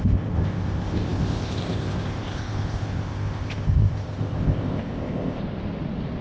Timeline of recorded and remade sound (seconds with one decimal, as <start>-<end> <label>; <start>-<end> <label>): 0.0-5.4 remade; 5.4-6.2 recorded